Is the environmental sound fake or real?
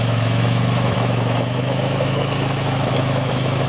fake